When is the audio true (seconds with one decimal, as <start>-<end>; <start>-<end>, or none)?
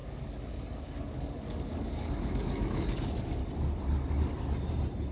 3.4-5.1